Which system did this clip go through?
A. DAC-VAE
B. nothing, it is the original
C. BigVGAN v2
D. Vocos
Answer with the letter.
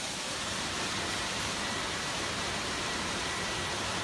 C